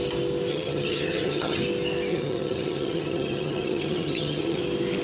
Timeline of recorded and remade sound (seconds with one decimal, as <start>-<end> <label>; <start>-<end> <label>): 0.0-0.5 recorded; 0.5-1.6 remade; 1.6-2.1 recorded; 2.1-4.6 remade; 4.6-5.0 recorded